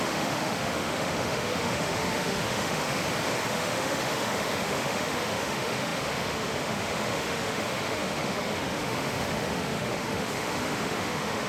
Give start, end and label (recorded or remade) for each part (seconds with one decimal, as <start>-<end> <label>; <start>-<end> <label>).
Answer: 0.0-3.0 remade; 3.0-3.5 recorded; 3.5-11.5 remade